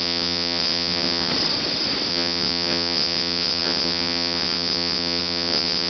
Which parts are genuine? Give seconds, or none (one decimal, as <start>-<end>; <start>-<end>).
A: 1.3-2.1